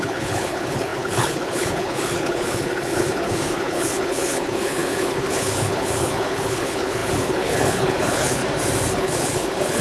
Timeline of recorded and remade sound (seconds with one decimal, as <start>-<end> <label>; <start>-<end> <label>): 0.0-8.4 remade; 8.4-8.9 recorded; 8.9-9.8 remade